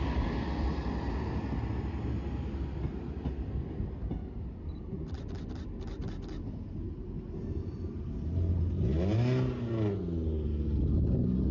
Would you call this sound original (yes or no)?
yes